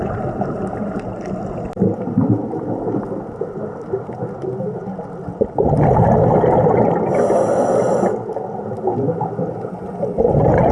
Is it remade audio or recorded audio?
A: recorded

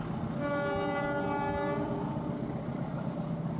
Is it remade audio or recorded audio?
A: recorded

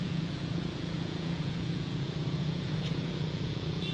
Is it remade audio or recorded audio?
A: remade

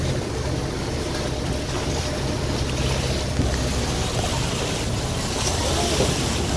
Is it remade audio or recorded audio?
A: recorded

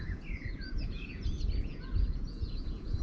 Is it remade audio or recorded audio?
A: remade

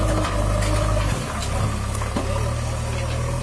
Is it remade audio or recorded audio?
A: recorded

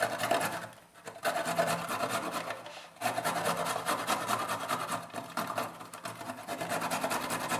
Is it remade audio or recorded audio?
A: recorded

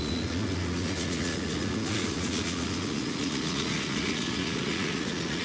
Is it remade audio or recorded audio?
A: remade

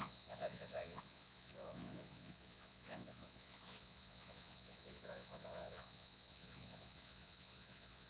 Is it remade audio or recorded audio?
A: remade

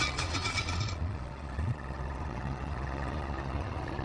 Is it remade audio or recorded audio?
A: remade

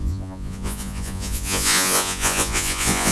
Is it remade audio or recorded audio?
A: remade